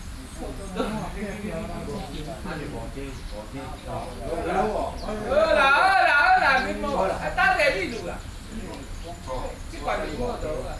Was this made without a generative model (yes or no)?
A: yes